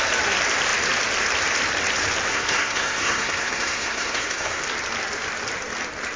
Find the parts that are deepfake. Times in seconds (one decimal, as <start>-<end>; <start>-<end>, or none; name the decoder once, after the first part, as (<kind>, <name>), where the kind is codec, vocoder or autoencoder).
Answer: 2.3-4.6 (codec, SNAC)